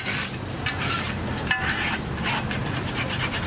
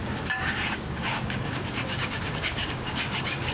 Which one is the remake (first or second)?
second